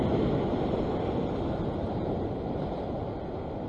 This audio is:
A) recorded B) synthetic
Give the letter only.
A